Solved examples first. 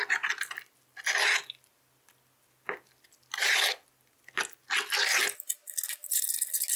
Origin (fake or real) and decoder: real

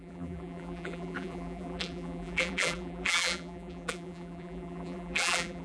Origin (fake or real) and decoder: fake, vocoder, BigVGAN v2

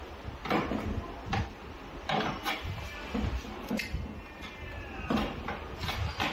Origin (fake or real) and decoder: real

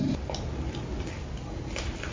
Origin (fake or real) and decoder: real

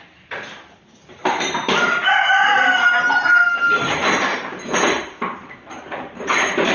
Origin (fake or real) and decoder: fake, vocoder, BigVGAN v2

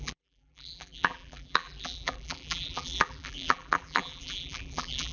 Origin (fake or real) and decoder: fake, vocoder, BigVGAN v2